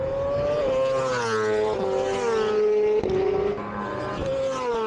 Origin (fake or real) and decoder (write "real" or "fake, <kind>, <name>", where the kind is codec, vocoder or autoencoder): real